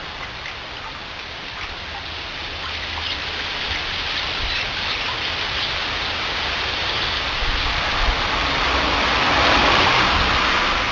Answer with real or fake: real